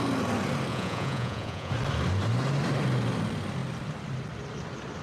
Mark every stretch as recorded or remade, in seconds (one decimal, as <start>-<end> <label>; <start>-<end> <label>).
0.0-0.7 recorded; 0.7-1.7 remade; 1.7-5.0 recorded